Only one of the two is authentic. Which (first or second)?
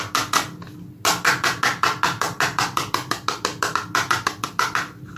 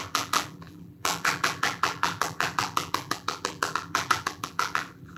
first